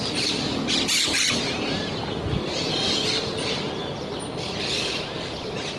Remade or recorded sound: recorded